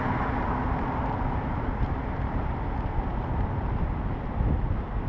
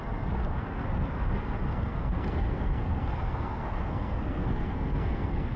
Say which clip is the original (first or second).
first